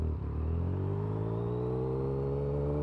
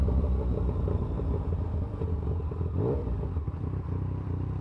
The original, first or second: first